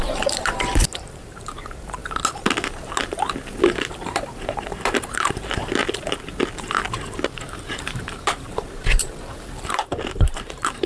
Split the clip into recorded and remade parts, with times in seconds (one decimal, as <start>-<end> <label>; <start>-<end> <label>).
0.0-2.0 remade; 2.0-3.9 recorded; 3.9-5.8 remade; 5.8-7.8 recorded; 7.8-10.9 remade

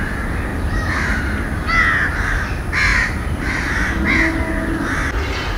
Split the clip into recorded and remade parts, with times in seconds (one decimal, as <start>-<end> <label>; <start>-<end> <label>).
0.0-0.5 recorded; 0.5-1.2 remade; 1.2-2.9 recorded; 2.9-3.9 remade; 3.9-5.6 recorded

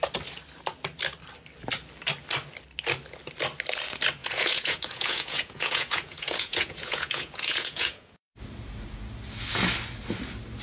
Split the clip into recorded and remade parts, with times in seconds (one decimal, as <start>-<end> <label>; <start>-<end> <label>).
0.0-4.2 recorded; 4.2-8.3 remade; 8.3-10.6 recorded

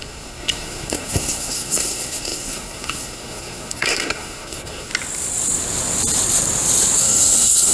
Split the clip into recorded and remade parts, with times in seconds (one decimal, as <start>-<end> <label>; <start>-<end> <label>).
0.0-4.9 remade; 4.9-7.0 recorded; 7.0-7.7 remade

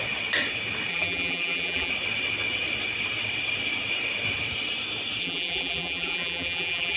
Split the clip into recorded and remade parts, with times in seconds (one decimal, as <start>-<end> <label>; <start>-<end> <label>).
0.0-0.9 recorded; 0.9-1.9 remade; 1.9-5.2 recorded; 5.2-7.0 remade

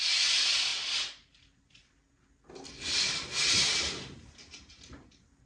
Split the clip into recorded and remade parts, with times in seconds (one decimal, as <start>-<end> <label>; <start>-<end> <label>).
0.0-5.5 recorded

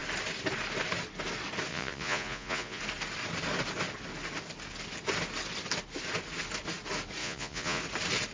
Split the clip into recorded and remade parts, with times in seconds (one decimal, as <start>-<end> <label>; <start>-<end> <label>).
0.0-1.7 recorded; 1.7-2.8 remade; 2.8-7.2 recorded; 7.2-7.8 remade; 7.8-8.3 recorded

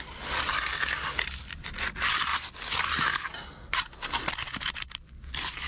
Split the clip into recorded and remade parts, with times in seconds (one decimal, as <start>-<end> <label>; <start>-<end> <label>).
0.0-5.7 recorded